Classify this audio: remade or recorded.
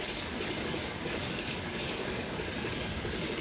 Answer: remade